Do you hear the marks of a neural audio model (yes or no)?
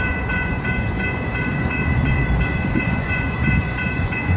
yes